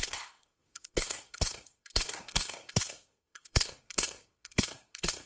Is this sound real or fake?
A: fake